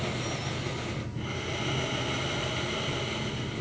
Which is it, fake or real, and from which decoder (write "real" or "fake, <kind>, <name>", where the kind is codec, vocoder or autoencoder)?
real